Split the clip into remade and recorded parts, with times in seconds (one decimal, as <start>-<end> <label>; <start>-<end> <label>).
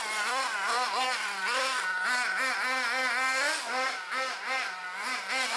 0.0-5.6 recorded